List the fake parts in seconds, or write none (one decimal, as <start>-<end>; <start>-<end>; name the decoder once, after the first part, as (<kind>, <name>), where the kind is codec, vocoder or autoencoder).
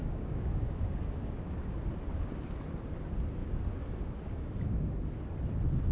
0.0-1.8 (codec, DAC); 3.4-4.9